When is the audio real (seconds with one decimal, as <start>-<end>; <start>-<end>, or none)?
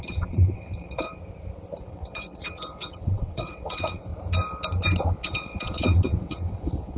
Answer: 1.1-1.8; 4.1-5.2